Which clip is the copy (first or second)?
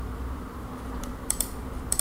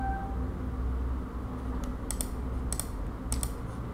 first